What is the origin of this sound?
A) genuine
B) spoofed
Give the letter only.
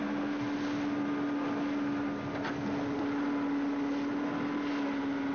A